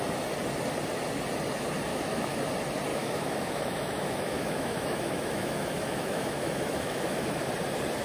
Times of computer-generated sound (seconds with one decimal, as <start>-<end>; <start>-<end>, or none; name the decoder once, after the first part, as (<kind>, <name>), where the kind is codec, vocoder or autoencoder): 1.9-2.4 (autoencoder, DAC-VAE); 2.9-7.5